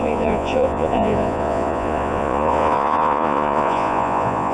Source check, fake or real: fake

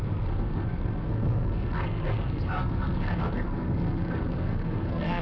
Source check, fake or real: fake